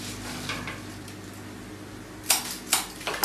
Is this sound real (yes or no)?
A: yes